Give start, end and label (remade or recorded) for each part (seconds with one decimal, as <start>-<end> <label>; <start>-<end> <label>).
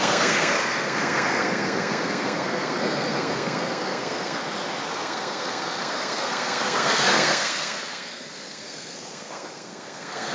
0.0-4.4 remade; 4.4-4.9 recorded; 4.9-10.3 remade